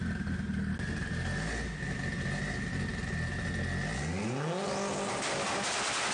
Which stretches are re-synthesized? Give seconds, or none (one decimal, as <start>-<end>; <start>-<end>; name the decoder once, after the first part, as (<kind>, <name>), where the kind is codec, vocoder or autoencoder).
none